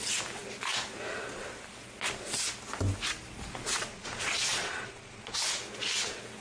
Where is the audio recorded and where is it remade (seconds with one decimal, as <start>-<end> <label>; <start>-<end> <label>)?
0.0-3.7 recorded; 3.7-5.5 remade; 5.5-6.4 recorded